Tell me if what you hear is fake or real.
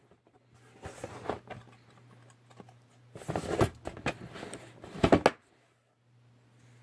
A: real